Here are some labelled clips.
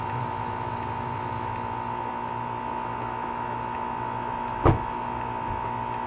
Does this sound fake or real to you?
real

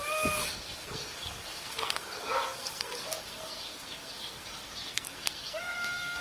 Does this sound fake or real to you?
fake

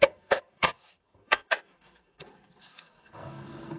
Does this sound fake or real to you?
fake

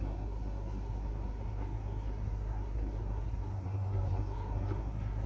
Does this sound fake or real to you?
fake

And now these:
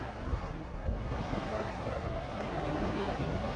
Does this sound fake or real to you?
fake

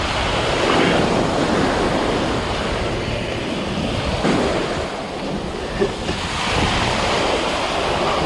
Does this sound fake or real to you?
real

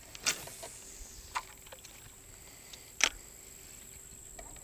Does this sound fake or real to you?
real